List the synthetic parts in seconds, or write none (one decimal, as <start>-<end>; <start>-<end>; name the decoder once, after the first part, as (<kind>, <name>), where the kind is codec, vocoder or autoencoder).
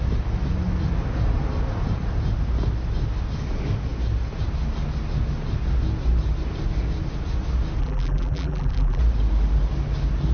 7.8-9.0 (vocoder, BigVGAN v2)